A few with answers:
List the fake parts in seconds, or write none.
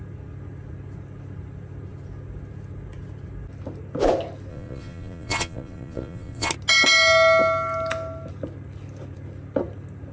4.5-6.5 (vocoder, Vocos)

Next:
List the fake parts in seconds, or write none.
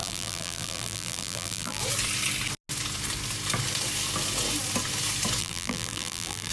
0.0-1.8 (vocoder, BigVGAN v2); 5.4-6.5